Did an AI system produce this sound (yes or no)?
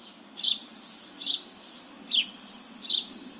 no